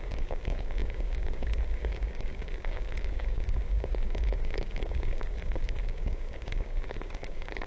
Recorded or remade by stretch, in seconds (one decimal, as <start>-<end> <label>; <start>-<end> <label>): 0.0-7.7 remade